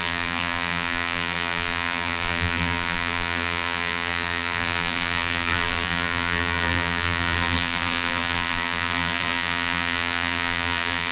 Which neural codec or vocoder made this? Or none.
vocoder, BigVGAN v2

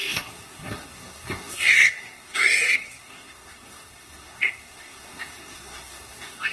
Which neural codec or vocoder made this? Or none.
codec, SNAC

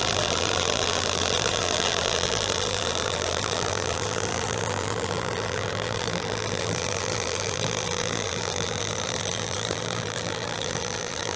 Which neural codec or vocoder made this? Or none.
vocoder, BigVGAN v2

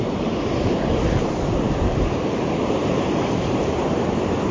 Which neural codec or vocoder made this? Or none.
vocoder, BigVGAN v2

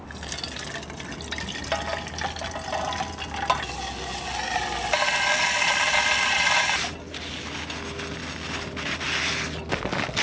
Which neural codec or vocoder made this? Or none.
none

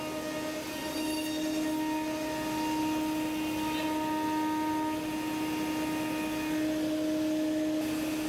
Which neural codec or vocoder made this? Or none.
none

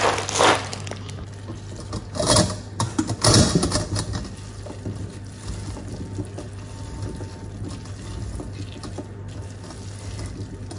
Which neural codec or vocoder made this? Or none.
none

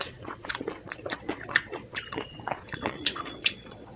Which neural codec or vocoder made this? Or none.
vocoder, Vocos